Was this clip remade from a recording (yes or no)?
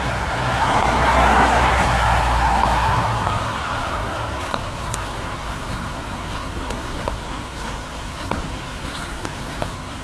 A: yes